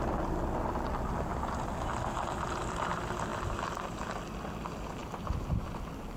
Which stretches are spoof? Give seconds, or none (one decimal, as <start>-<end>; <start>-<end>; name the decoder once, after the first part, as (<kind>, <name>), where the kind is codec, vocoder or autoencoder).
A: none